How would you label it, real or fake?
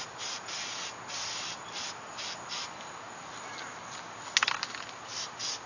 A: real